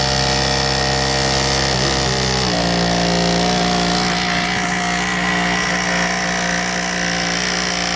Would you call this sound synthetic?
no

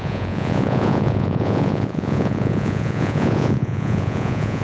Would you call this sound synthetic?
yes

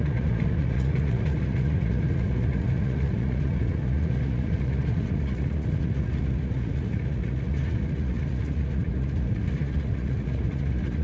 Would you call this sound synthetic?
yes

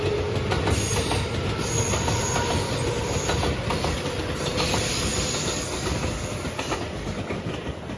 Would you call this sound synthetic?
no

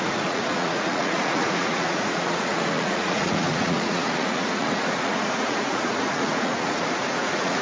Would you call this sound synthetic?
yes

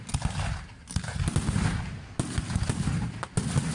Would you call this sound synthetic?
no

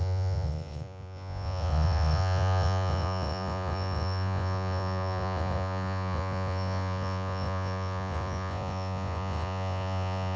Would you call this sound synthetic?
yes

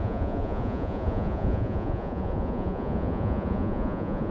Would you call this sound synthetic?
yes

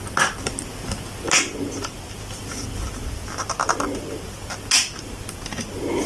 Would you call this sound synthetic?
no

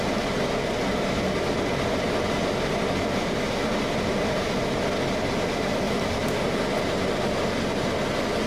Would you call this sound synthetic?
no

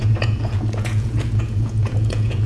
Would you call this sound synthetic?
yes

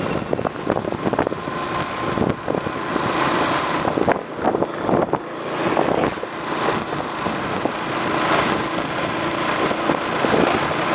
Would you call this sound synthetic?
no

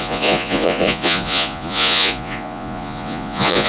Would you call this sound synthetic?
yes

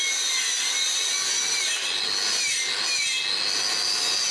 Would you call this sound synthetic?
no